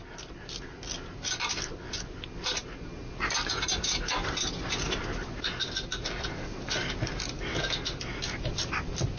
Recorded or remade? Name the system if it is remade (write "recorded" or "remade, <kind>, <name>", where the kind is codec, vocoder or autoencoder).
recorded